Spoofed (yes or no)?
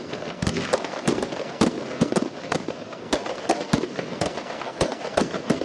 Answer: yes